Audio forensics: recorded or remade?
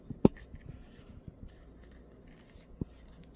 recorded